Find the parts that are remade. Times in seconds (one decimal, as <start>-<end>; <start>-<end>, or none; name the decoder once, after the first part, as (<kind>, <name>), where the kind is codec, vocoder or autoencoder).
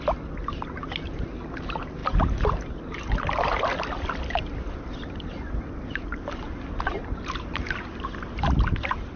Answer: none